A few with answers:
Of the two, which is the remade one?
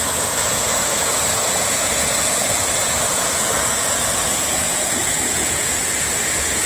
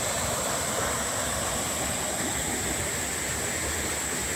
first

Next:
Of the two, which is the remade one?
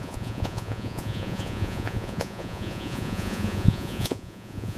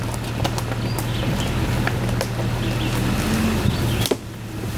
first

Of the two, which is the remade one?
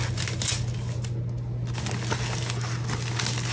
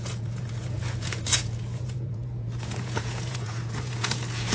second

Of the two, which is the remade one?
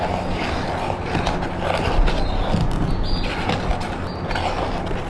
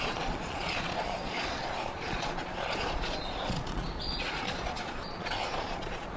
second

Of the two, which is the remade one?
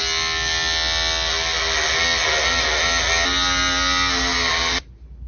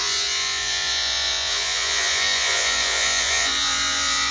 second